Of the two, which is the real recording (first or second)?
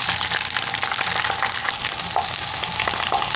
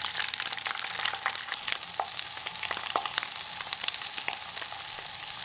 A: first